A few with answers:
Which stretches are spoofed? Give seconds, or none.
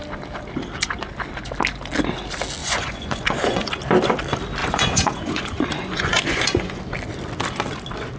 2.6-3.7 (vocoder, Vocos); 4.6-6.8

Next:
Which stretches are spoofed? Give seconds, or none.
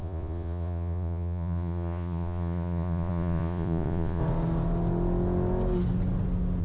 0.0-4.2 (vocoder, Vocos)